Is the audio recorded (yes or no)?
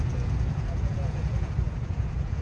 no